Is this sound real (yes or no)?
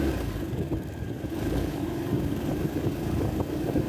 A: no